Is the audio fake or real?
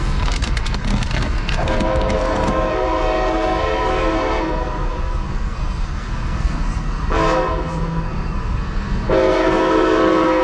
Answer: fake